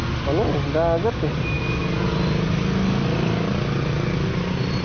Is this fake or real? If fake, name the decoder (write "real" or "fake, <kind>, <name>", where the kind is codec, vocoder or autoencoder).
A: real